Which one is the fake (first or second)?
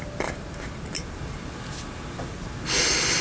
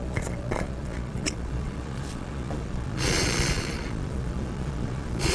second